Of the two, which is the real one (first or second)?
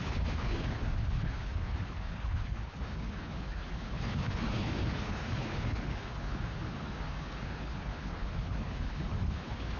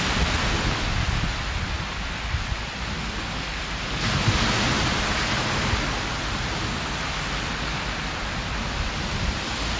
second